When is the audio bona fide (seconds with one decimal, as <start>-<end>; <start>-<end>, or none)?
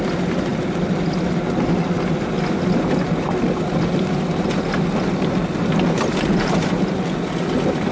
0.0-7.9